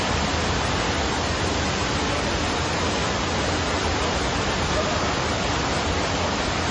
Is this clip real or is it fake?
real